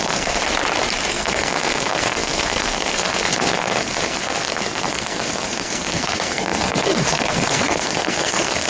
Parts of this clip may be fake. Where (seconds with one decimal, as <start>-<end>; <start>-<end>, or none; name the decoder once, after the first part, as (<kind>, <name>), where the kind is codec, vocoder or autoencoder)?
0.0-0.4 (codec, SNAC); 1.1-8.7